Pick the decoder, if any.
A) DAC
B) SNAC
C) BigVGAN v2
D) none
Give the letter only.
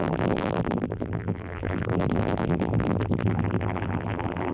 C